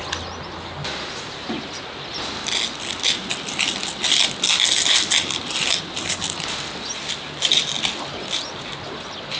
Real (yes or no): yes